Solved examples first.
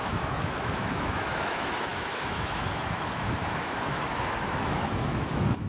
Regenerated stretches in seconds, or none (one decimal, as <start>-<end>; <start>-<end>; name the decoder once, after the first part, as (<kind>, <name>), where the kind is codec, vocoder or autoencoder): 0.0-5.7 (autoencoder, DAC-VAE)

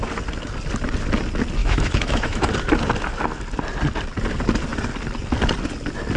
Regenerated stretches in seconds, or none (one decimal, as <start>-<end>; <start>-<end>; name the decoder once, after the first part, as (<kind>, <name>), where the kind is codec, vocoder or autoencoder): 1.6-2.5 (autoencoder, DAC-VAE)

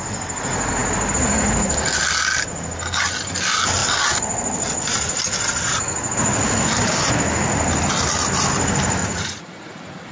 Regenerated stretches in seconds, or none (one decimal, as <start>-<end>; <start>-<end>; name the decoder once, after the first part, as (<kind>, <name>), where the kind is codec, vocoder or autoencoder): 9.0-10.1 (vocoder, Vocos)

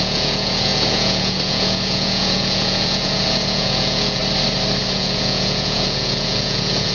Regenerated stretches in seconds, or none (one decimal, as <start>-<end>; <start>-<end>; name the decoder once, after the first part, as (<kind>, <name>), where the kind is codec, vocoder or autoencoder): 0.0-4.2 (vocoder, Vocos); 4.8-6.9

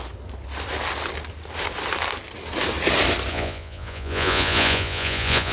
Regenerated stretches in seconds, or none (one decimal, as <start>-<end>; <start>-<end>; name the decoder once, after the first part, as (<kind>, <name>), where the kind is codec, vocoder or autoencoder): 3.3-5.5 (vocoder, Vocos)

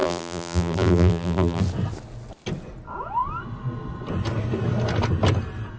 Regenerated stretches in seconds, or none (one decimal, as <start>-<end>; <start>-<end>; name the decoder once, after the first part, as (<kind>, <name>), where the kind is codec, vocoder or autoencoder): 0.0-1.6 (vocoder, BigVGAN v2)

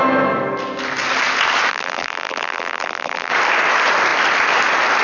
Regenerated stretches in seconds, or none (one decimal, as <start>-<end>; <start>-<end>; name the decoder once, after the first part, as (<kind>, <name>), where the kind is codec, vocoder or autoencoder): 1.7-3.3 (vocoder, BigVGAN v2)